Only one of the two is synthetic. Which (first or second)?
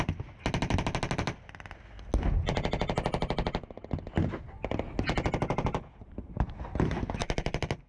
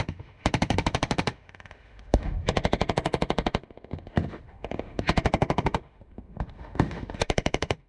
second